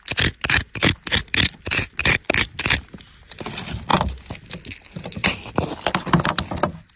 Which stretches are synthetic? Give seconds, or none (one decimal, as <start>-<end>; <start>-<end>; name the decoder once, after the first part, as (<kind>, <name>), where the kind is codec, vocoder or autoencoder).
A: none